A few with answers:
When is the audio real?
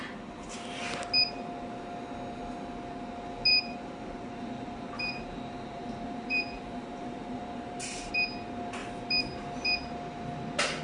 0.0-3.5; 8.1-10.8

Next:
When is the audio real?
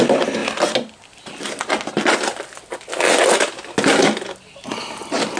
0.0-5.4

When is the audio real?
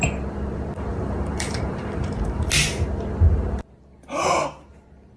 0.0-0.9; 2.5-5.2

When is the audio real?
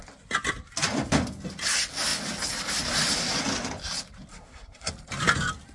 0.0-4.3; 4.9-5.7